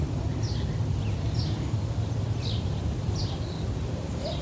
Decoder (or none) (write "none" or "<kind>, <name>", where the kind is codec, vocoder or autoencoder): none